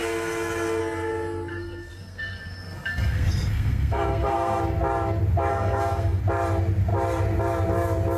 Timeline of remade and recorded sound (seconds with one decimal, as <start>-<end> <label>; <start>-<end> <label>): 0.0-0.8 remade; 0.8-1.5 recorded; 1.5-4.6 remade; 4.6-5.5 recorded; 5.5-6.2 remade; 6.2-8.2 recorded